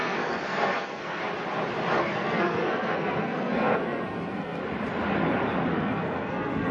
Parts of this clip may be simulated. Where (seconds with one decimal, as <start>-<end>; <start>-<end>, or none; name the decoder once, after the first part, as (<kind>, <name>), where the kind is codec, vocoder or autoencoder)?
0.0-1.2 (codec, SNAC); 2.0-4.6; 5.7-6.7